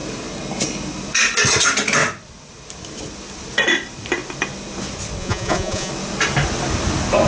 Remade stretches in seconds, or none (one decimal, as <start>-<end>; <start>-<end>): 5.2-5.9